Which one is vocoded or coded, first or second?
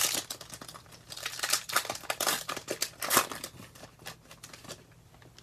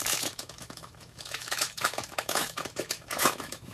second